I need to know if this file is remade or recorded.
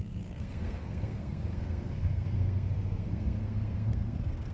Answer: remade